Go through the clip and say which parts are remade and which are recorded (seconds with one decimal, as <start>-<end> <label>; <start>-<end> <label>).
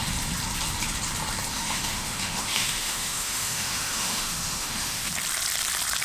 0.0-1.5 recorded; 1.5-5.1 remade; 5.1-6.0 recorded